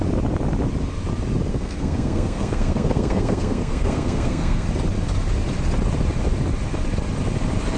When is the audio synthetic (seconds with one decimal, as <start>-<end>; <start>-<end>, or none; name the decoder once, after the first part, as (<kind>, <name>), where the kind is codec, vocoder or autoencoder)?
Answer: 1.5-4.7 (codec, SNAC)